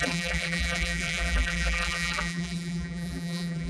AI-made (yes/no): yes